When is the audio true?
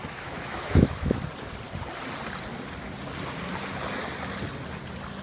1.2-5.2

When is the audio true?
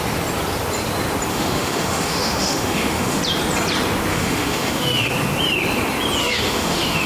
0.0-1.3; 3.2-4.1; 5.1-6.2